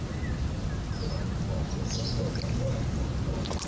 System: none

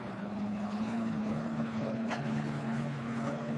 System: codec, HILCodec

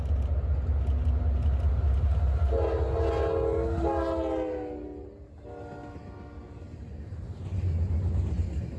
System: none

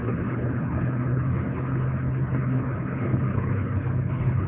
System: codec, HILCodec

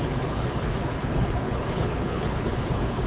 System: codec, HILCodec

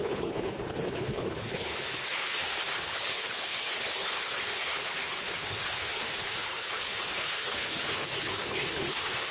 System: codec, HILCodec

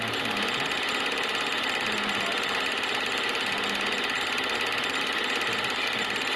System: none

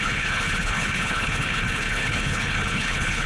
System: codec, HILCodec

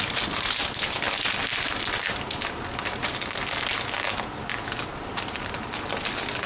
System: none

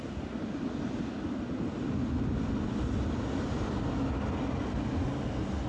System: none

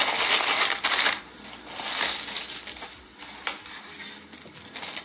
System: none